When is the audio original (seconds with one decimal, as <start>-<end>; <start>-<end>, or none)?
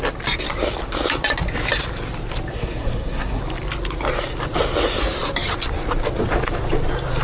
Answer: 0.0-2.5; 3.4-7.2